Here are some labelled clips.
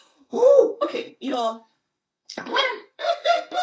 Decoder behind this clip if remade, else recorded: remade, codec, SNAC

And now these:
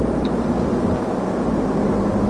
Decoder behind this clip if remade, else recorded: recorded